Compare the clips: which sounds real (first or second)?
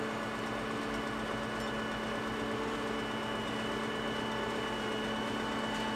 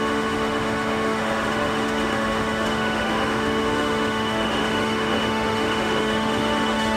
first